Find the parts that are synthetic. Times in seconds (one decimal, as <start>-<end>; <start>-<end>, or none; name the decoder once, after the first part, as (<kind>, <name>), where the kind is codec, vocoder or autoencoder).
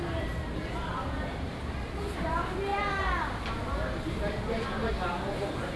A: 0.8-1.5 (vocoder, BigVGAN v2)